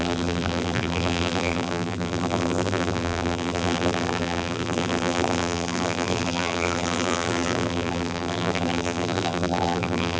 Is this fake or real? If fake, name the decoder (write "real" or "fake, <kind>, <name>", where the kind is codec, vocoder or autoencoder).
fake, vocoder, BigVGAN v2